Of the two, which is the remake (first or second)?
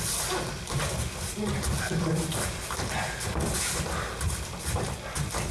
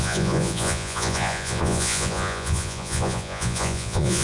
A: second